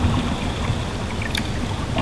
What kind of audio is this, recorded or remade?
recorded